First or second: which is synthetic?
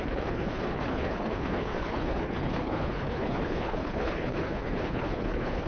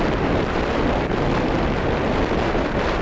first